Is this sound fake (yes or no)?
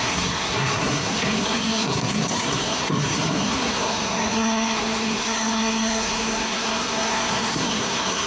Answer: yes